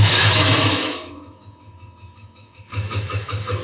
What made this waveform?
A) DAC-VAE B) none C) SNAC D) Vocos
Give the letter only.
A